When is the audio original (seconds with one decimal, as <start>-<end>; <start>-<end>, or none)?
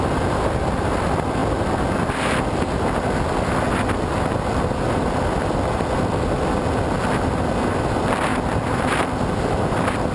0.0-10.1